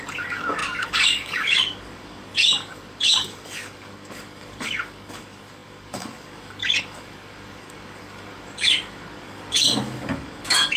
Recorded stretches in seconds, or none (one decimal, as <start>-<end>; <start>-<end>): none